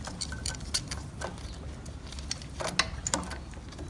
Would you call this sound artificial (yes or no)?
no